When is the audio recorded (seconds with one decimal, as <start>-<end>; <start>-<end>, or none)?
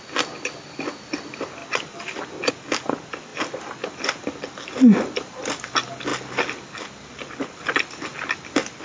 0.0-8.8